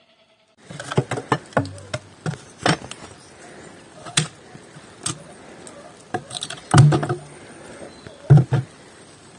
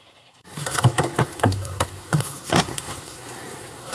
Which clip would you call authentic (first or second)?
first